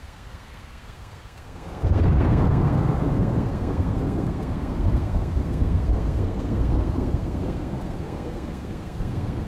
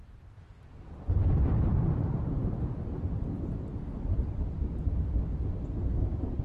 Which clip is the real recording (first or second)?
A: second